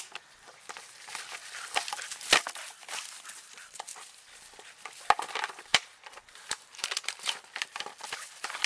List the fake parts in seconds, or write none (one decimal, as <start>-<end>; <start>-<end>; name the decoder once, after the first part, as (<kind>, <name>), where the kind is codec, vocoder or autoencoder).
5.7-7.4 (vocoder, BigVGAN v2)